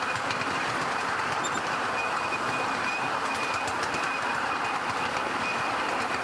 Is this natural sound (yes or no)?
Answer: yes